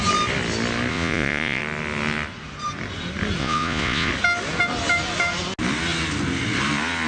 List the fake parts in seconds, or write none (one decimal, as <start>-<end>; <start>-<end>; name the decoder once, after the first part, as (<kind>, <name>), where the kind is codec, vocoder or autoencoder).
0.9-1.6 (vocoder, Vocos); 3.4-4.1